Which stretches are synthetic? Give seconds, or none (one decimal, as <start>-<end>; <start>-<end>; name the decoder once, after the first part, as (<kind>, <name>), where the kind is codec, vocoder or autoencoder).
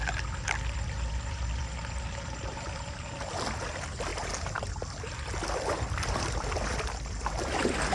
0.0-7.9 (vocoder, BigVGAN v2)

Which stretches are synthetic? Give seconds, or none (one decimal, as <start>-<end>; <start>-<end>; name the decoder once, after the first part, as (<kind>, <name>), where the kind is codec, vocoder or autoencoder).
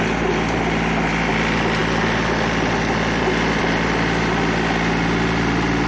none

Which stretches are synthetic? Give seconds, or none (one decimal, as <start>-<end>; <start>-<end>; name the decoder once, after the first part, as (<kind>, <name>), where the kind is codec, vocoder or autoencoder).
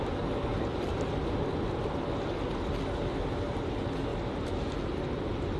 none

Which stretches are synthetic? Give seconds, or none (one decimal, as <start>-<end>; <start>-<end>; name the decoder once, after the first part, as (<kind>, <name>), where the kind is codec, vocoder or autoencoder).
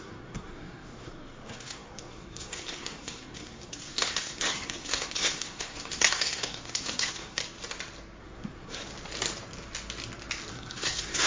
0.0-7.4 (codec, SNAC); 8.2-8.8; 10.5-11.3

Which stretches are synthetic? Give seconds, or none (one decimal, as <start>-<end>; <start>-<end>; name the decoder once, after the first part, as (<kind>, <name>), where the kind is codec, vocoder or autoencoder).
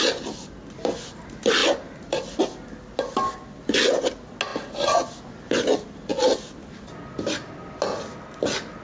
none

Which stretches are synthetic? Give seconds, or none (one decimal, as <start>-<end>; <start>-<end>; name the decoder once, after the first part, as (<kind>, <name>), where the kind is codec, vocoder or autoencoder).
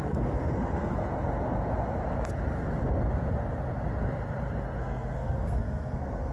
0.0-1.0 (codec, SNAC); 4.8-6.3